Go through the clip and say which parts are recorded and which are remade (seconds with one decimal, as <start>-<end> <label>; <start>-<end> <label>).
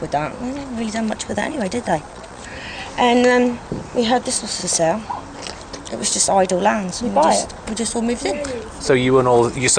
0.0-1.3 recorded; 1.3-2.4 remade; 2.4-9.8 recorded